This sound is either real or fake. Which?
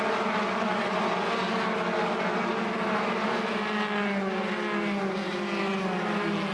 real